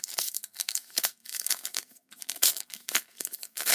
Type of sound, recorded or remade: remade